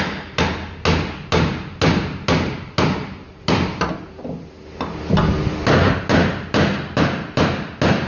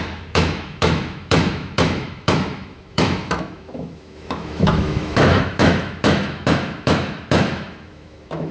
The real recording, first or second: first